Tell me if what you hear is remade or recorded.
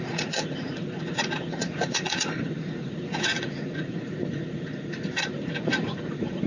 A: remade